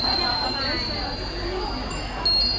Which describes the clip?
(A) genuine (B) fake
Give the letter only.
A